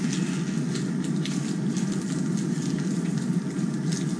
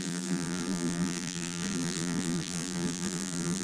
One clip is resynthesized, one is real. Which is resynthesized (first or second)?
second